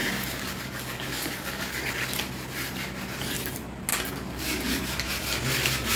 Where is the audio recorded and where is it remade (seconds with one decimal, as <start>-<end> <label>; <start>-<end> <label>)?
0.0-1.9 remade; 1.9-3.9 recorded; 3.9-4.8 remade; 4.8-6.0 recorded